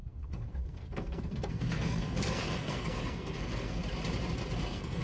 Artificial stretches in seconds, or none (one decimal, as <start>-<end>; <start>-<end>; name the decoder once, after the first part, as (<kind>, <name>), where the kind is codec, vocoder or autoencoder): 0.0-3.8 (codec, SNAC); 4.6-5.0